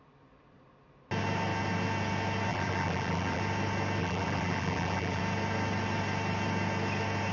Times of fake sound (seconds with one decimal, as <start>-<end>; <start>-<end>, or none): 2.5-3.4; 4.0-5.2